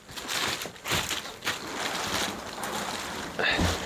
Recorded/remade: recorded